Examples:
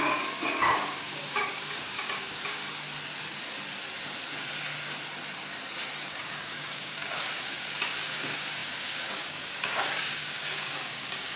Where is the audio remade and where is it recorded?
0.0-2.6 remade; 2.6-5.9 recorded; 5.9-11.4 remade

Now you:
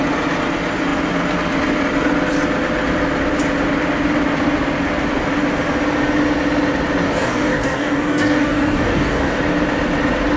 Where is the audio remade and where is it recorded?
0.0-7.0 recorded; 7.0-9.4 remade; 9.4-10.4 recorded